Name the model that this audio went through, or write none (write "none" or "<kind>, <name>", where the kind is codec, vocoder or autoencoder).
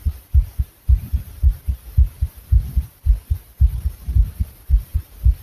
none